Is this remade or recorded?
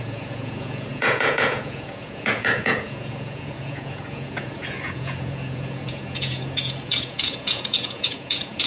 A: remade